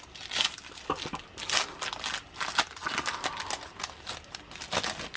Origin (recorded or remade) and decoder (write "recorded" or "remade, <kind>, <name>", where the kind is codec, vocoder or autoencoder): recorded